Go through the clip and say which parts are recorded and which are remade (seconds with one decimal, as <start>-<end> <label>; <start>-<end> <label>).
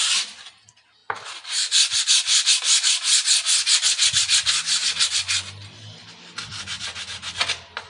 0.0-7.9 recorded